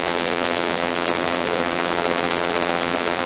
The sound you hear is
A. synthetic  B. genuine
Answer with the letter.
A